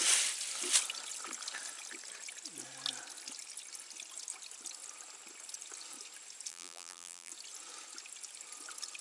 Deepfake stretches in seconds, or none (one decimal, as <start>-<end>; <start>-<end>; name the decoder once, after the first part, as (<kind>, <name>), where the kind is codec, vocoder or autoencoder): 6.5-7.3 (vocoder, BigVGAN v2)